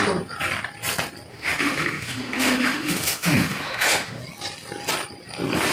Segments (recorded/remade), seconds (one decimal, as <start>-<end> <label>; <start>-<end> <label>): 0.0-1.3 recorded; 1.3-4.2 remade; 4.2-5.7 recorded